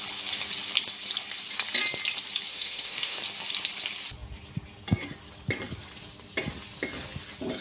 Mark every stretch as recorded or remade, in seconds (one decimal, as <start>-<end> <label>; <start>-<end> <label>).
0.0-2.5 recorded; 2.5-3.2 remade; 3.2-7.6 recorded